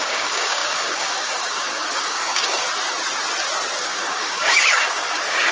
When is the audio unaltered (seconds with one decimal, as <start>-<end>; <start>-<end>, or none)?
2.6-3.8

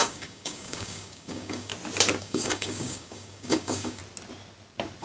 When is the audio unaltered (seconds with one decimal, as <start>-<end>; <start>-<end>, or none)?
1.7-2.2; 4.0-5.0